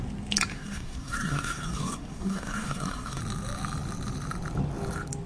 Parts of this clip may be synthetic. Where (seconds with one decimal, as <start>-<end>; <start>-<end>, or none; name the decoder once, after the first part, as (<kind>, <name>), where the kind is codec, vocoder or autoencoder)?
0.5-3.2 (codec, SNAC)